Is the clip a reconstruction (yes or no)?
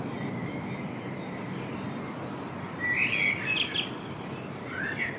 no